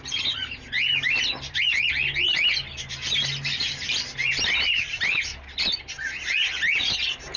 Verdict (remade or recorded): recorded